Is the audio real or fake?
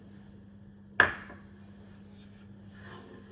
real